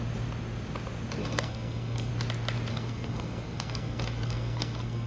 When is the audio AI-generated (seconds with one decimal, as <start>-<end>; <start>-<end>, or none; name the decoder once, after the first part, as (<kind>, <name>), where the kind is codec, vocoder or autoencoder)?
1.2-2.1 (codec, SNAC); 2.7-5.1